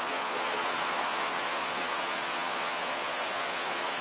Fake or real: fake